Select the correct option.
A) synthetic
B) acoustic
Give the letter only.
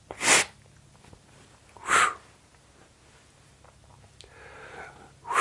B